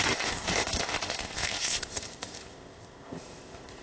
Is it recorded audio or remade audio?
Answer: remade